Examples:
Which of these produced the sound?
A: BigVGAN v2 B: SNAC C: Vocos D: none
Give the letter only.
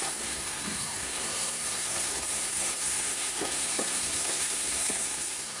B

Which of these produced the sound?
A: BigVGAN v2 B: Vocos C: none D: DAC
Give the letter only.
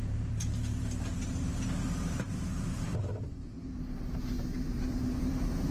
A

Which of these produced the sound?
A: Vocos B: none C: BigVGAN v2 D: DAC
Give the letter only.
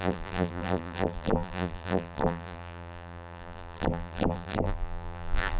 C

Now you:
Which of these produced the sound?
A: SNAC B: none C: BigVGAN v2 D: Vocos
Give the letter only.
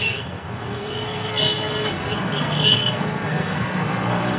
A